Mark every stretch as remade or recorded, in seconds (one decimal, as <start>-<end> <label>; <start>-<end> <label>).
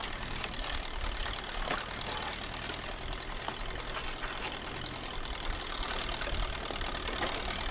0.0-7.7 recorded